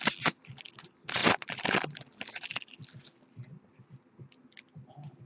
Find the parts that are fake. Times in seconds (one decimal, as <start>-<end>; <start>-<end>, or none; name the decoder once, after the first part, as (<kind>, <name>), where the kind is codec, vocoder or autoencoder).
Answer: none

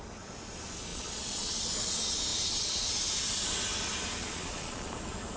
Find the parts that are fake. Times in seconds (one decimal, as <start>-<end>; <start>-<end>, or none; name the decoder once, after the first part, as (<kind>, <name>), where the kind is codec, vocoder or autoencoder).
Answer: 0.9-1.5 (vocoder, Vocos); 4.2-4.9

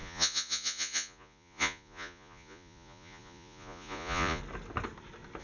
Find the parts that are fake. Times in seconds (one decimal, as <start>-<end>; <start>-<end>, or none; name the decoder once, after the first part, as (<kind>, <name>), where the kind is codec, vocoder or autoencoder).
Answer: 0.0-4.4 (vocoder, Vocos)

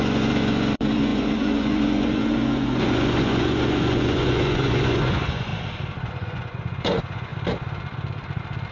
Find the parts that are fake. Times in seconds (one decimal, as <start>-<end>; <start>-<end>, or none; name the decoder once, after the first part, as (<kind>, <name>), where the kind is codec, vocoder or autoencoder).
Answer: 0.0-5.5 (vocoder, Vocos); 6.0-7.3